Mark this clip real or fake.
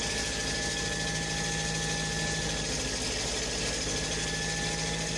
real